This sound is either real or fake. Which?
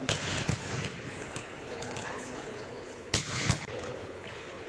fake